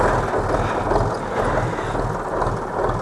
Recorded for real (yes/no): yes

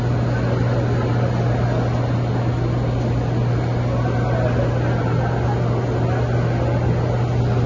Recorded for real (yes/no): yes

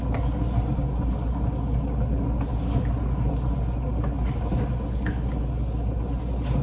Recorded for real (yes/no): yes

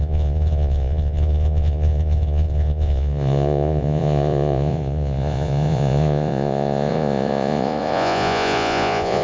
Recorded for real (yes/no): no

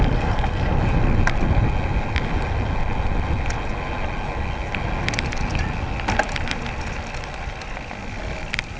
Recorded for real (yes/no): yes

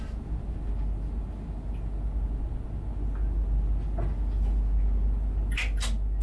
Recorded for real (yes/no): yes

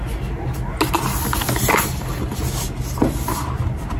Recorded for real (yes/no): yes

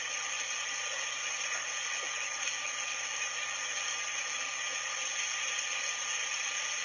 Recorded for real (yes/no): yes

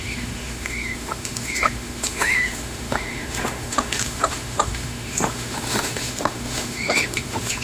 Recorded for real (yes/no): no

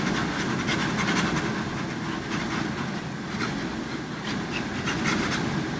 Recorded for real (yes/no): yes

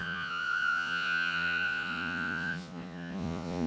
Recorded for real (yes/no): no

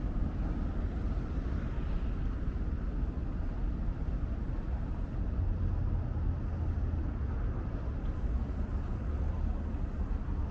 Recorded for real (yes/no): yes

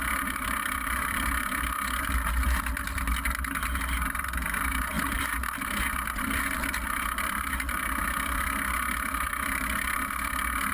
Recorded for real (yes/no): yes